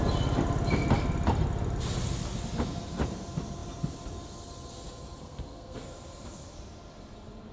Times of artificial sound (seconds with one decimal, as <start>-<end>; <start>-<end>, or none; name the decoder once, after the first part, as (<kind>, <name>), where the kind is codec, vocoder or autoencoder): 5.2-5.8 (codec, SNAC)